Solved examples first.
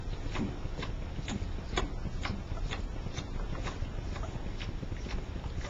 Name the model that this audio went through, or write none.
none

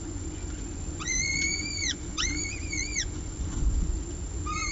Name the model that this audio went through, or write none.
vocoder, Vocos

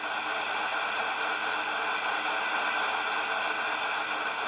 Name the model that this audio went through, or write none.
none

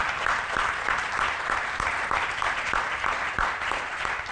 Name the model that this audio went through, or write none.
none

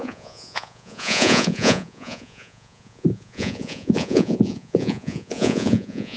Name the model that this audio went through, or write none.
vocoder, Vocos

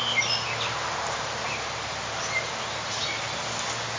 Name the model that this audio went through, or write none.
none